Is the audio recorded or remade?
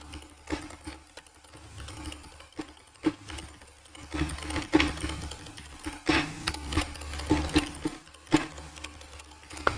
recorded